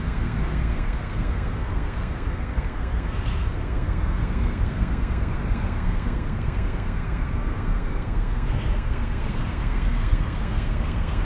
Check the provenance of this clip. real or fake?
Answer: fake